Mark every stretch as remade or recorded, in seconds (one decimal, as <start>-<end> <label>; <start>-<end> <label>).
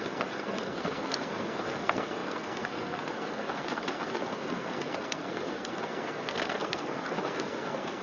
0.0-8.0 remade